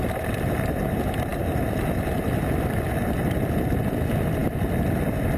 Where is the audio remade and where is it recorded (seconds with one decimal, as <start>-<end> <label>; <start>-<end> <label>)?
0.0-5.4 recorded